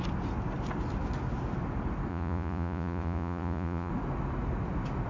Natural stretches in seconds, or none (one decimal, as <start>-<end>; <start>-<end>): 0.0-2.1; 3.9-5.1